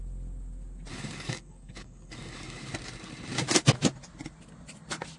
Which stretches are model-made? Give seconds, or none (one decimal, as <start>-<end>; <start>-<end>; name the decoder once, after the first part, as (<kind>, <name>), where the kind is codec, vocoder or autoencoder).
0.9-2.7 (codec, DAC)